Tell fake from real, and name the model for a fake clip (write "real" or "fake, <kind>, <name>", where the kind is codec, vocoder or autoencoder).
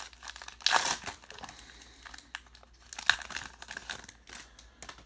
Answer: real